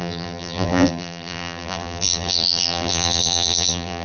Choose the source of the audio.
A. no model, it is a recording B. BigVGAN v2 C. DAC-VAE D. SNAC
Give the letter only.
B